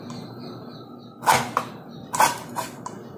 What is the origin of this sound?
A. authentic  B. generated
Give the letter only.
A